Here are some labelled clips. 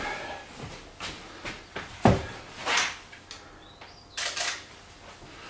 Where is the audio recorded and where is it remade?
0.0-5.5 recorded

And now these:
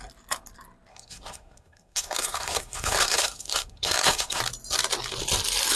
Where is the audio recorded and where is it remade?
0.0-0.9 recorded; 0.9-4.4 remade; 4.4-5.8 recorded

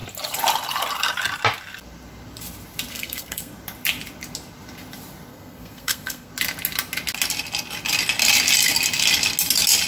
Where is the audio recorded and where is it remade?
0.0-2.9 recorded; 2.9-3.5 remade; 3.5-5.3 recorded; 5.3-6.3 remade; 6.3-9.9 recorded

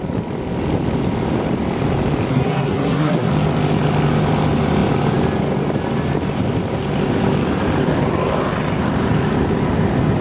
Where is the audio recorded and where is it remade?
0.0-2.3 recorded; 2.3-3.3 remade; 3.3-10.2 recorded

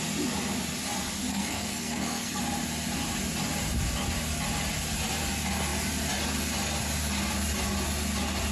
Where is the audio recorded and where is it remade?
0.0-1.3 recorded; 1.3-2.4 remade; 2.4-8.5 recorded

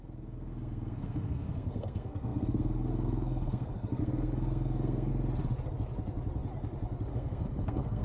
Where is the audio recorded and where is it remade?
0.0-5.1 remade; 5.1-7.1 recorded; 7.1-8.0 remade

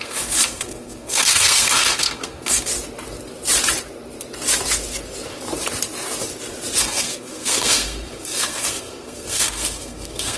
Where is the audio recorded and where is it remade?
0.0-2.7 remade; 2.7-6.8 recorded; 6.8-10.4 remade

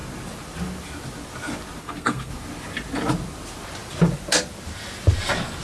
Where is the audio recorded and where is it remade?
0.0-1.8 recorded; 1.8-2.3 remade; 2.3-5.6 recorded